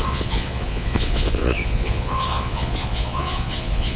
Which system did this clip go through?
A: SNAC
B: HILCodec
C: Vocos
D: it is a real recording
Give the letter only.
C